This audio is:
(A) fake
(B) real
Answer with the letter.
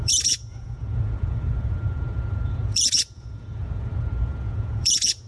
A